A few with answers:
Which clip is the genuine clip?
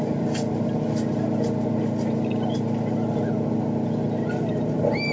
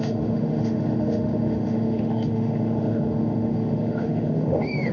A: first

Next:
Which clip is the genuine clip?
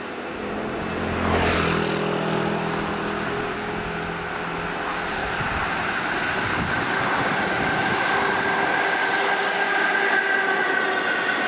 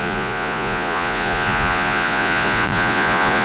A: first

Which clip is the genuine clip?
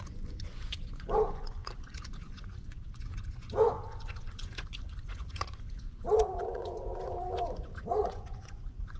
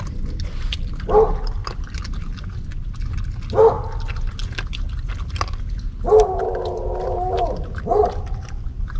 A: second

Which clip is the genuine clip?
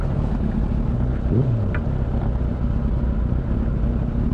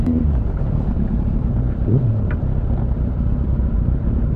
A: first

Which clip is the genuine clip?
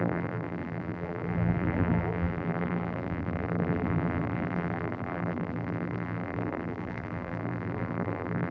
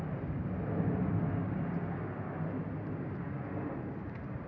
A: second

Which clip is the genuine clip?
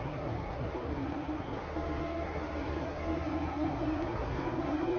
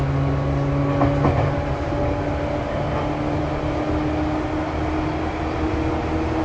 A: second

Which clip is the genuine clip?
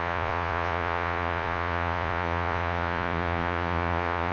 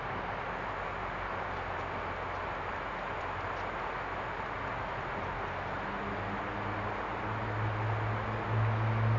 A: second